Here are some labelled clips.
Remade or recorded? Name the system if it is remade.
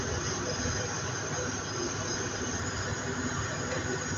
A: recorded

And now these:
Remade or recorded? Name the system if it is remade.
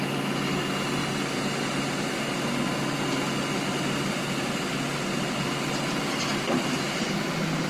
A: recorded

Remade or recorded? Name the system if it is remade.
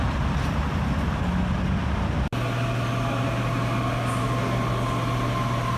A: recorded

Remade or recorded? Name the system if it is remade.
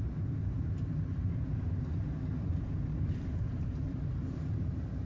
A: remade, vocoder, BigVGAN v2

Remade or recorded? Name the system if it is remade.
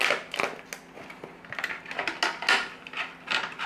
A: recorded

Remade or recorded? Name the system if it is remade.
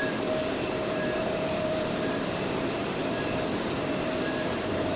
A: remade, vocoder, BigVGAN v2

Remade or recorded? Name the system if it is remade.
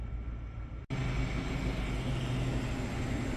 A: recorded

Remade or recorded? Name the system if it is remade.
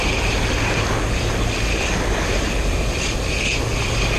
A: recorded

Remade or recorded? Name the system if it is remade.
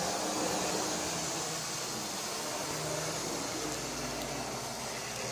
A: recorded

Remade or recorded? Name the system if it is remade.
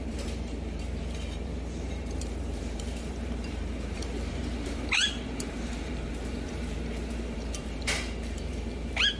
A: remade, vocoder, BigVGAN v2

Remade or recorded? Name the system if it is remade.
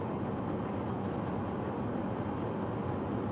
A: recorded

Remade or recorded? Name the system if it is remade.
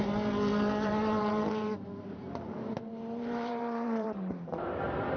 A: remade, vocoder, BigVGAN v2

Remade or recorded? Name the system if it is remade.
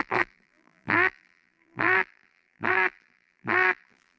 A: remade, vocoder, BigVGAN v2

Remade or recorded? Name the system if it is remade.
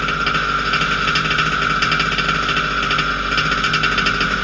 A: recorded